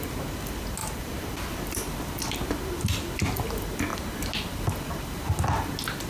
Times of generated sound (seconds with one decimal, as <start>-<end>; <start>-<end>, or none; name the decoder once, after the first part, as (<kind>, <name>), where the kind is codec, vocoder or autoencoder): 0.8-2.0 (vocoder, BigVGAN v2)